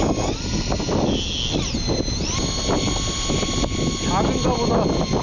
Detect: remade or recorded recorded